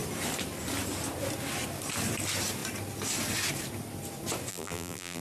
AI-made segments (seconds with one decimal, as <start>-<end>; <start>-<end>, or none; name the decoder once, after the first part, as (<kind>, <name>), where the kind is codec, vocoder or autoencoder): 4.5-5.2 (vocoder, BigVGAN v2)